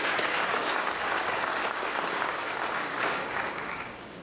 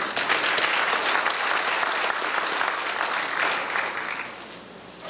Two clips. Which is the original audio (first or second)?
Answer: second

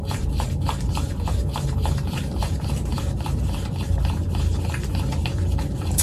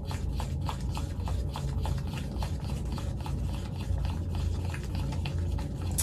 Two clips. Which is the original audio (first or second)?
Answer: second